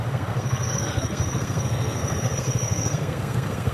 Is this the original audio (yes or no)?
no